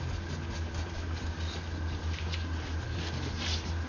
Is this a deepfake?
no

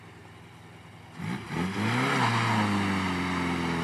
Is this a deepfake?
no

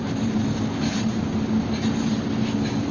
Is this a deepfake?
no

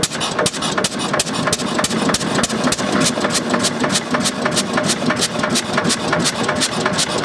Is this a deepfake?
no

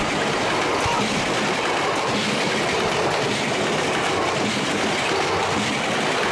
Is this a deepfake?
no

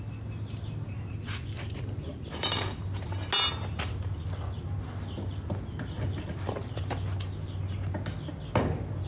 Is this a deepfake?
no